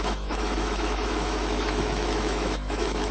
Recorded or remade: remade